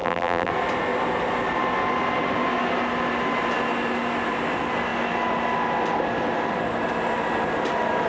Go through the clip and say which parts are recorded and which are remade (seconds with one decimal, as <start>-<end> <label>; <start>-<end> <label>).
0.0-0.5 remade; 0.5-8.1 recorded